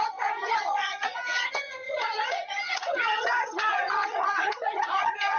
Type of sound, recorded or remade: remade